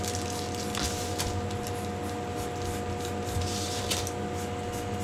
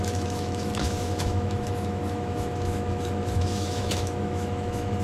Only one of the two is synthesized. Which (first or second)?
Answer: second